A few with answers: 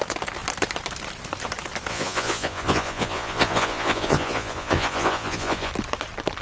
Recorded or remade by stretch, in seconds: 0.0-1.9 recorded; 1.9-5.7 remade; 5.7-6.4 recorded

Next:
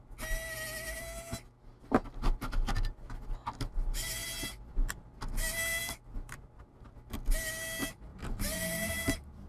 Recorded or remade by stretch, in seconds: 0.0-4.2 recorded; 4.2-5.2 remade; 5.2-5.7 recorded; 5.7-6.6 remade; 6.6-8.1 recorded; 8.1-8.9 remade; 8.9-9.5 recorded

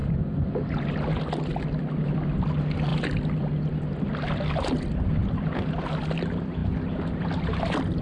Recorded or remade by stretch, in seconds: 0.0-8.0 recorded